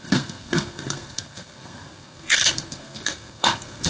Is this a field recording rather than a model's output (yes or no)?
no